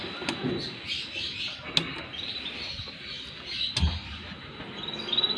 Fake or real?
real